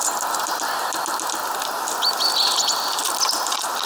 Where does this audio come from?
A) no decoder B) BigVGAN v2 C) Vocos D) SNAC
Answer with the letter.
A